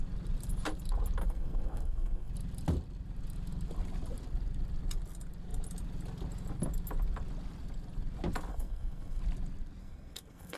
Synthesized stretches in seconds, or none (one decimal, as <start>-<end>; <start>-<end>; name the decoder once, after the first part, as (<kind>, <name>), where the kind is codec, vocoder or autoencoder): 1.2-2.3 (codec, SNAC); 8.5-9.2; 9.8-10.6